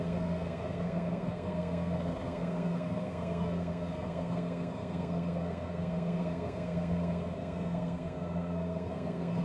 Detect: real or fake fake